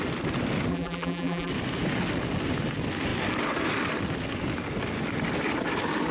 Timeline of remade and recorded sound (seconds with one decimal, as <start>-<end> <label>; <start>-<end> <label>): 0.0-0.7 recorded; 0.7-1.5 remade; 1.5-6.1 recorded